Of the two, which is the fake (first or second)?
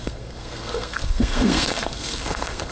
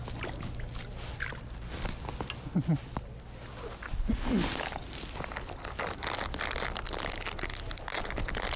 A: first